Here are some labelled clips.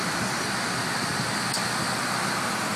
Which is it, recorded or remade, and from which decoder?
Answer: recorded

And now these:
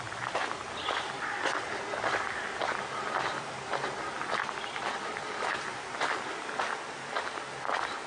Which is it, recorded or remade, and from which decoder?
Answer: remade, vocoder, BigVGAN v2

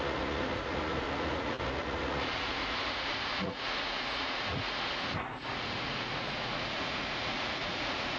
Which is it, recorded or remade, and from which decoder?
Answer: remade, vocoder, Vocos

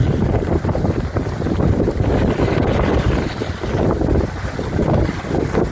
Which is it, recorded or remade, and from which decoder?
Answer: recorded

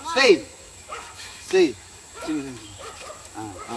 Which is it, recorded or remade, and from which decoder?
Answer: remade, autoencoder, DAC-VAE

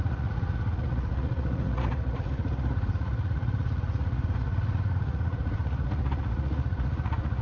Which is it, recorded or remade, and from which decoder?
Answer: remade, vocoder, Vocos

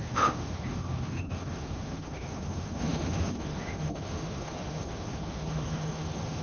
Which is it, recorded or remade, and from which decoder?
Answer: remade, autoencoder, DAC-VAE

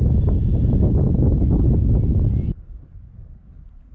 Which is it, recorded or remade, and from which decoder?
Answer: recorded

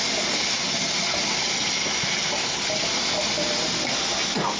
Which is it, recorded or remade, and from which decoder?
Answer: recorded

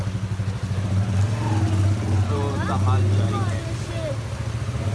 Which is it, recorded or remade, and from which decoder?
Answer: recorded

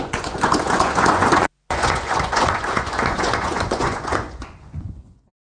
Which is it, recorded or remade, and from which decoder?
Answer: remade, vocoder, Vocos